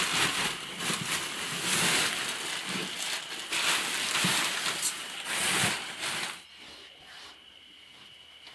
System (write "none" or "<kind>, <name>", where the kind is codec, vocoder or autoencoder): none